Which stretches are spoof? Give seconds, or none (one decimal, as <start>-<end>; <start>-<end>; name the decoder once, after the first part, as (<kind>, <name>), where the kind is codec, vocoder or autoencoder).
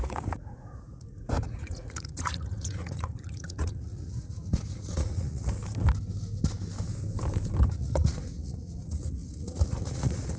0.0-5.6 (vocoder, Vocos); 7.7-10.4